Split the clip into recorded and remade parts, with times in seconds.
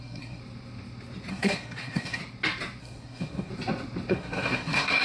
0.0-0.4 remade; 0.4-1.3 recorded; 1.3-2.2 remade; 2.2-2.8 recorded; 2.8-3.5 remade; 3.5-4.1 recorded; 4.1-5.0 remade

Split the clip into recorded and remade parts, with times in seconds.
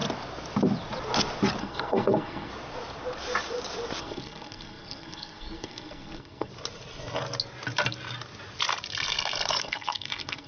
0.0-1.6 recorded; 1.6-2.5 remade; 2.5-4.0 recorded; 4.0-6.5 remade; 6.5-9.6 recorded; 9.6-10.5 remade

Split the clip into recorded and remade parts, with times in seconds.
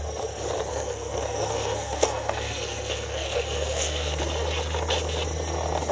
0.0-0.7 recorded; 0.7-4.2 remade; 4.2-5.9 recorded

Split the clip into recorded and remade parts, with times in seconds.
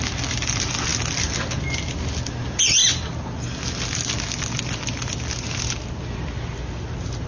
0.0-7.3 recorded